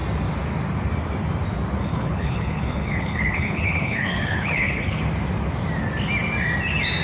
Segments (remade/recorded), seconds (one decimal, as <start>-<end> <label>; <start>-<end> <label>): 0.0-1.9 recorded; 1.9-5.0 remade; 5.0-7.0 recorded

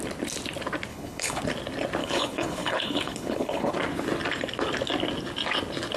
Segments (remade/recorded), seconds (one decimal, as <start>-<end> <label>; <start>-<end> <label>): 0.0-0.9 recorded; 0.9-1.4 remade; 1.4-2.0 recorded; 2.0-3.7 remade; 3.7-6.0 recorded

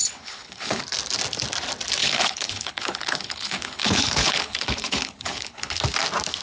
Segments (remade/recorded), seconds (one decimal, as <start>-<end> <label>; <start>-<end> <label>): 0.0-0.8 remade; 0.8-2.0 recorded; 2.0-5.8 remade; 5.8-6.4 recorded

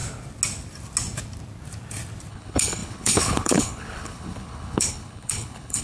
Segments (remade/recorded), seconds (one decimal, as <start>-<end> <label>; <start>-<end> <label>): 0.0-2.3 recorded; 2.3-5.8 remade